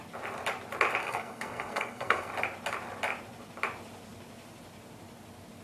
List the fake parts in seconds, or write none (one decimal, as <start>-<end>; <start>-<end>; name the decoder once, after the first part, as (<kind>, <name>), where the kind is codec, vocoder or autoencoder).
1.0-2.3 (codec, SNAC)